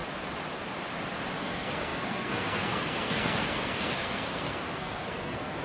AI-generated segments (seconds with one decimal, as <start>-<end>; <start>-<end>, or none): 1.4-5.6